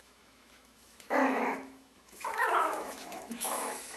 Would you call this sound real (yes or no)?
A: no